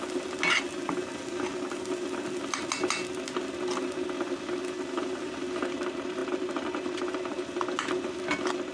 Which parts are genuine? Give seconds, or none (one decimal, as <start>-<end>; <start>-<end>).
0.0-8.7